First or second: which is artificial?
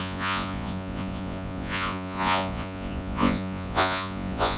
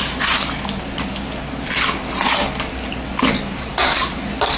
first